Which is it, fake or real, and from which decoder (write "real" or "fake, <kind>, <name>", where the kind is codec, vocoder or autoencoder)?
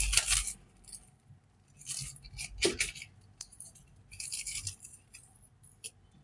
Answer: real